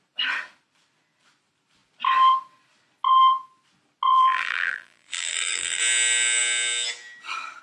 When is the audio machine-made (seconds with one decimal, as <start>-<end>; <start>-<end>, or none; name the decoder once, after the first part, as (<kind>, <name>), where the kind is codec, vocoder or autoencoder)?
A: 4.1-5.8 (vocoder, BigVGAN v2)